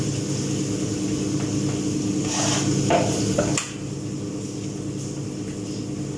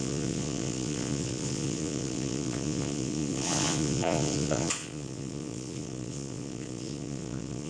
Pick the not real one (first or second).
second